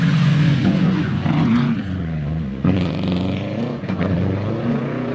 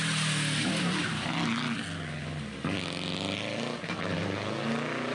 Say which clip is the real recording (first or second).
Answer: second